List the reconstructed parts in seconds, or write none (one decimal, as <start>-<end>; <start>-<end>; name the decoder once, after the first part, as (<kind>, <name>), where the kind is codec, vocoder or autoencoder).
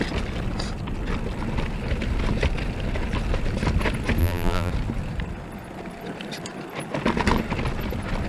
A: 4.2-4.7 (vocoder, BigVGAN v2)